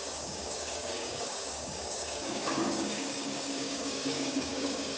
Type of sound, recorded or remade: remade